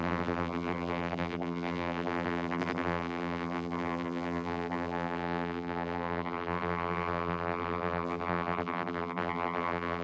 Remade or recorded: remade